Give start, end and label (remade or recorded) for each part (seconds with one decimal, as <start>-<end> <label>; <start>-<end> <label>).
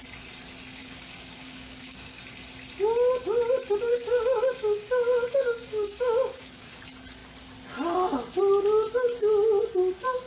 0.0-0.8 recorded; 0.8-2.2 remade; 2.2-3.9 recorded; 3.9-6.8 remade; 6.8-10.3 recorded